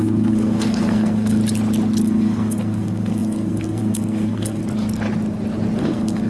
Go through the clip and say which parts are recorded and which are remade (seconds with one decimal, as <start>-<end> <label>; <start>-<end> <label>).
0.0-1.4 remade; 1.4-2.0 recorded; 2.0-4.6 remade; 4.6-5.8 recorded; 5.8-6.3 remade